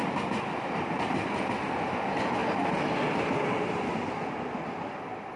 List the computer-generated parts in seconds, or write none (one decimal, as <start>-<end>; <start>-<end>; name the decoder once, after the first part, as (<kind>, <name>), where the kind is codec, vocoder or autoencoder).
none